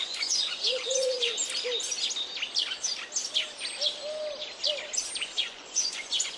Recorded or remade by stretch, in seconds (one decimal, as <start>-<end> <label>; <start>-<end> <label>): 0.0-1.4 remade; 1.4-5.2 recorded; 5.2-6.4 remade